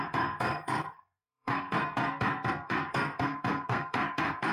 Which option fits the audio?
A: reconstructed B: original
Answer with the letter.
A